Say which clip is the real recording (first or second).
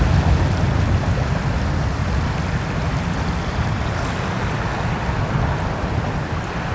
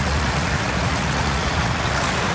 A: first